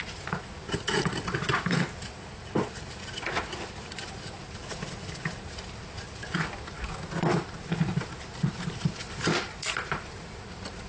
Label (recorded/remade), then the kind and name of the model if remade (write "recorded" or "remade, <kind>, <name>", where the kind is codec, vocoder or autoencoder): recorded